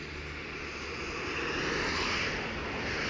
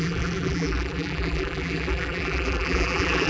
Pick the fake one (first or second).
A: second